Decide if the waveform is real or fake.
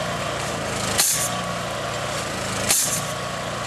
real